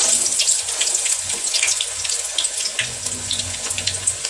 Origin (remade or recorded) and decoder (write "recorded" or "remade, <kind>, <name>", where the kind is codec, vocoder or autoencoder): remade, vocoder, Vocos